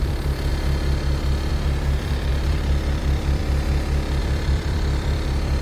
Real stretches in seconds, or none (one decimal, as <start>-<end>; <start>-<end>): 0.5-1.5; 3.4-4.2